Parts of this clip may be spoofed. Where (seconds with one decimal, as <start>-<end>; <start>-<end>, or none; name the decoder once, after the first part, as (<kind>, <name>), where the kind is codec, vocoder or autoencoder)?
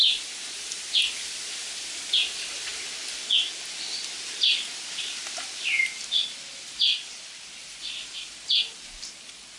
none